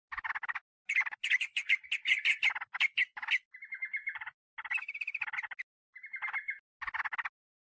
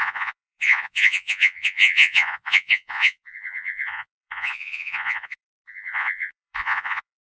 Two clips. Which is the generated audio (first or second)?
second